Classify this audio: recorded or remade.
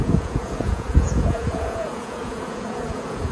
remade